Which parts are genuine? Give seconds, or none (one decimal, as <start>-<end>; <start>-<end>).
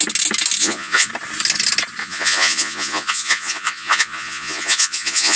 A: 0.0-0.6; 1.1-2.0